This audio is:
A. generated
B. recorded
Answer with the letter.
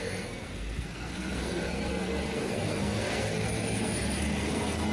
A